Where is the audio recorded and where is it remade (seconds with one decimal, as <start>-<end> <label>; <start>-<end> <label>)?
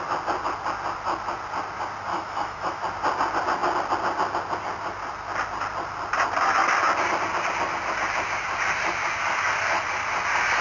0.0-2.1 recorded; 2.1-2.8 remade; 2.8-10.6 recorded